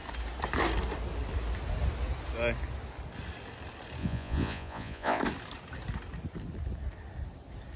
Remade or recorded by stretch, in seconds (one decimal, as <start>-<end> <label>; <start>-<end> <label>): 0.0-4.0 recorded; 4.0-5.2 remade; 5.2-7.8 recorded